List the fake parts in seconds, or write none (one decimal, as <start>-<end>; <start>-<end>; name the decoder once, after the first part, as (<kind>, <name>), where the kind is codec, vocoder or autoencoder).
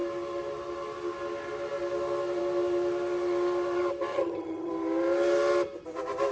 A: 4.1-4.7 (vocoder, HiFi-GAN)